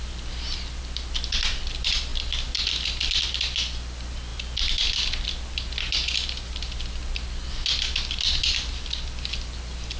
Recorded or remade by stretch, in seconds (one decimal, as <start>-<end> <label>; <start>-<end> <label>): 0.0-10.0 recorded